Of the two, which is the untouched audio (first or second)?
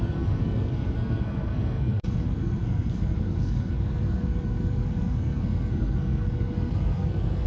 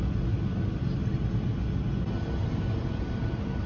second